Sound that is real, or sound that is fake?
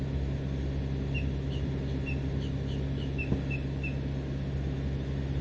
real